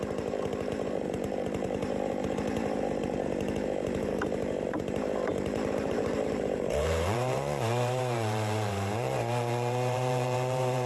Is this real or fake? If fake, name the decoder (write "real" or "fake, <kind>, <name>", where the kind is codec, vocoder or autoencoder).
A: fake, vocoder, BigVGAN v2